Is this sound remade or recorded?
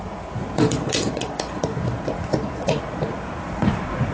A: remade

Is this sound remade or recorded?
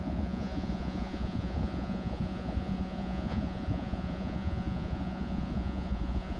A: remade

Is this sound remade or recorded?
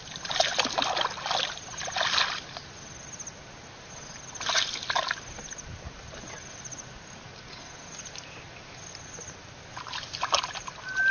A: recorded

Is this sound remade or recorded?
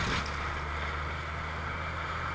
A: recorded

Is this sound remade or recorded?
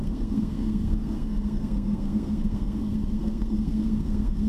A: remade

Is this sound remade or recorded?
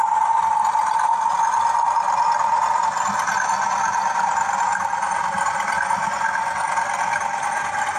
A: recorded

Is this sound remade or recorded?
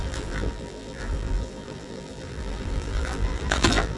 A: remade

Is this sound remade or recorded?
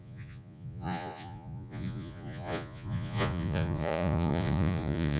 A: remade